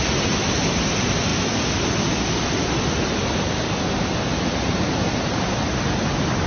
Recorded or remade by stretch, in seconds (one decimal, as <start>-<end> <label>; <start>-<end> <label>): 0.0-6.5 recorded